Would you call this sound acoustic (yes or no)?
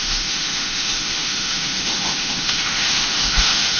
no